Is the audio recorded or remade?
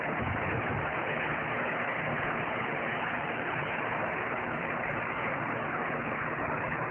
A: remade